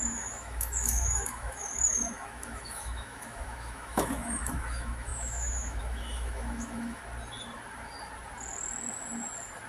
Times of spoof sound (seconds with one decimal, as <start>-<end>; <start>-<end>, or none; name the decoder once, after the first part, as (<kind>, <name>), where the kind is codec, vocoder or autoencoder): 0.0-7.0 (autoencoder, DAC-VAE)